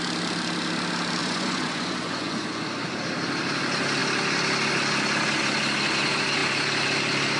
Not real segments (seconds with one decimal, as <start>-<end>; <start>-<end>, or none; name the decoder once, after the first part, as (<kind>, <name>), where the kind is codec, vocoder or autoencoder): 1.2-2.9 (vocoder, Vocos)